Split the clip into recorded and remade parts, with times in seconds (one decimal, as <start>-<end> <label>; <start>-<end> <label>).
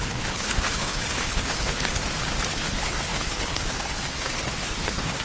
0.0-2.0 remade; 2.0-2.5 recorded; 2.5-5.2 remade